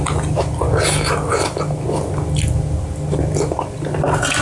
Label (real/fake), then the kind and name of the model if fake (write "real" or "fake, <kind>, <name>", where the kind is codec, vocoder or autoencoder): real